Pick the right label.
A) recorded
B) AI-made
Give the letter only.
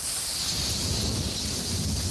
A